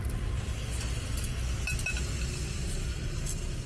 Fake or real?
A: real